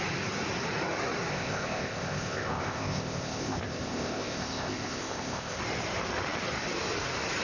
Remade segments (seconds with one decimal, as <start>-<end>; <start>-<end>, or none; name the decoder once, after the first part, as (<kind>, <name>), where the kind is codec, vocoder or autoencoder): 1.3-5.6 (codec, ZipCodec)